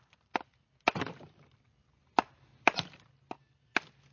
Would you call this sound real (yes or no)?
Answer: yes